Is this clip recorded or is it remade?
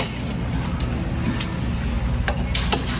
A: recorded